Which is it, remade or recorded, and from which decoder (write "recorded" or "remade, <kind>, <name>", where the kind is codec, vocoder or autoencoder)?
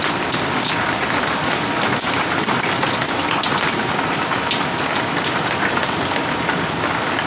recorded